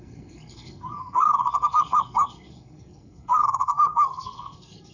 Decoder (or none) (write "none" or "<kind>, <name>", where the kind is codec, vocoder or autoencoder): codec, SNAC